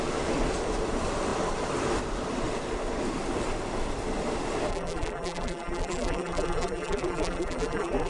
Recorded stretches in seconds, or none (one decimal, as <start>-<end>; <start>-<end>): 0.0-4.7